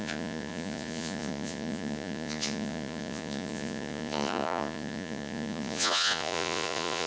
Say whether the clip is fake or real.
fake